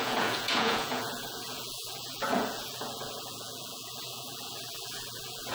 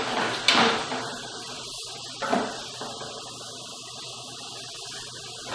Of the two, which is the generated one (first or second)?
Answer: first